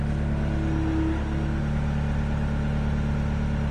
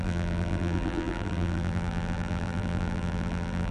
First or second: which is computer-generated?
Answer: second